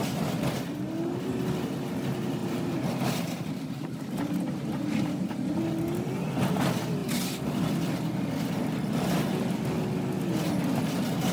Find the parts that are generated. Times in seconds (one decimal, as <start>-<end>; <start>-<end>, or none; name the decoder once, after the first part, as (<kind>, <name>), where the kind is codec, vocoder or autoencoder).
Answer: 2.4-5.6 (vocoder, BigVGAN v2)